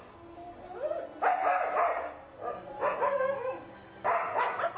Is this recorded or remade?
recorded